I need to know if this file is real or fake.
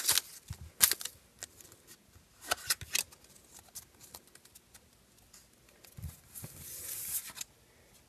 real